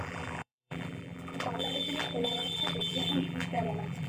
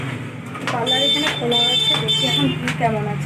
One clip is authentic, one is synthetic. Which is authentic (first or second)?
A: second